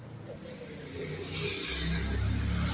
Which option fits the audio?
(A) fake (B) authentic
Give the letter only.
B